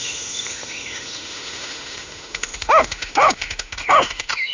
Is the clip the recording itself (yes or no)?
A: no